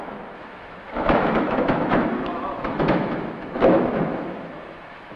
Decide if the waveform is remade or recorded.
remade